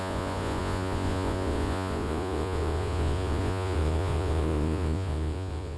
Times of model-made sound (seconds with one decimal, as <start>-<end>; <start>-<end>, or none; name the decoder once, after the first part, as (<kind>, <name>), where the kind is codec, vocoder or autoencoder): 0.0-5.8 (vocoder, Vocos)